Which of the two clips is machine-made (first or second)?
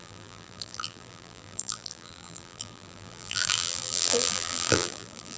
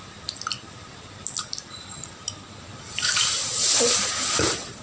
first